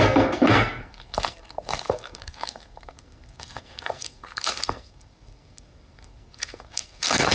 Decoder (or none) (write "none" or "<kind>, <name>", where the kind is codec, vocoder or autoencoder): codec, SNAC